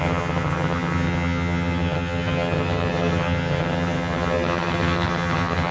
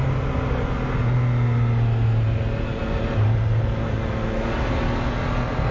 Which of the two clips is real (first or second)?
second